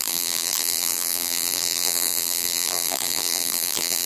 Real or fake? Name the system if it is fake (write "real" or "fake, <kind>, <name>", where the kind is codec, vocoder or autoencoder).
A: fake, vocoder, BigVGAN v2